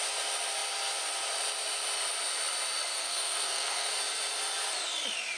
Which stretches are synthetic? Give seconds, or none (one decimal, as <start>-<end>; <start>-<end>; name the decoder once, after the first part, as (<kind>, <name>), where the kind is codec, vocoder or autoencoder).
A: 2.9-3.9 (codec, SNAC)